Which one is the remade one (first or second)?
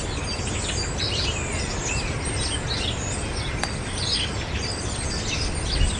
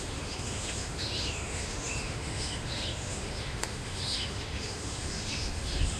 second